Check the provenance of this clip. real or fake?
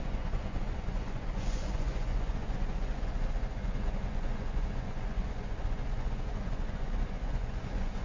fake